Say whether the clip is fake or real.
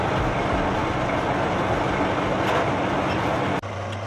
real